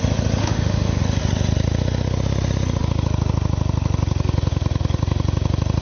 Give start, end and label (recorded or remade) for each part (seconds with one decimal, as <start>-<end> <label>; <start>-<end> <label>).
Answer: 0.0-0.4 recorded; 0.4-1.0 remade; 1.0-5.8 recorded

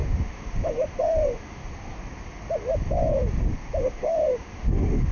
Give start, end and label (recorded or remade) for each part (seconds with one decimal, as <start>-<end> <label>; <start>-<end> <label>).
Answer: 0.0-1.6 remade; 1.6-3.8 recorded; 3.8-5.1 remade